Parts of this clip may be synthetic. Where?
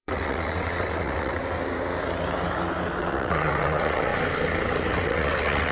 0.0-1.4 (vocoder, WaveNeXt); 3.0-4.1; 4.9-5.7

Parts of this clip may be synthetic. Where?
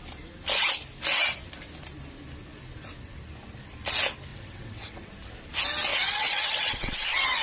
4.3-5.1 (vocoder, WaveNeXt); 5.9-7.4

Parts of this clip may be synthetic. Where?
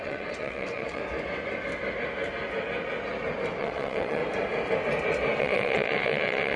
0.0-1.0 (vocoder, WaveNeXt); 3.6-4.2; 5.4-6.6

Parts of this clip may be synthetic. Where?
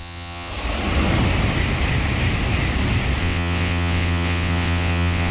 0.0-0.5 (vocoder, WaveNeXt); 3.2-5.3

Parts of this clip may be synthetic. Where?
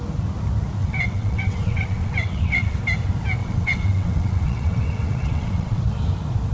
0.8-2.8 (vocoder, WaveNeXt); 3.4-5.8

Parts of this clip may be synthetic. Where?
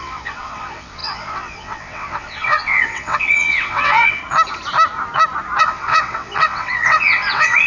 0.0-4.2 (vocoder, WaveNeXt); 5.6-7.7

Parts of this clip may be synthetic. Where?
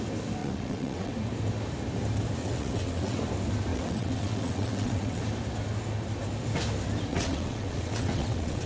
0.4-1.1 (vocoder, WaveNeXt); 2.4-3.2; 3.7-5.2; 7.1-8.7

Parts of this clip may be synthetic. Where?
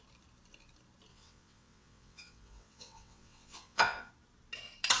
1.1-4.1 (vocoder, WaveNeXt)